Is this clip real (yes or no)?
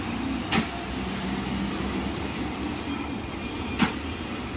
yes